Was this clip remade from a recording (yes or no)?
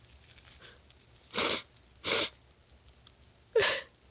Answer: no